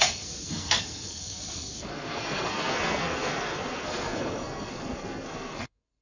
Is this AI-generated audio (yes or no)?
yes